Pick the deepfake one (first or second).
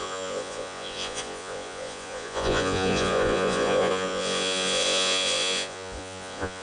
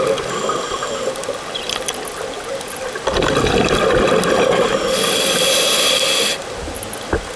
first